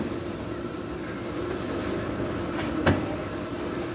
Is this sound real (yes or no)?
yes